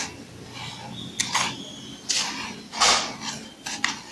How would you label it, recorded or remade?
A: recorded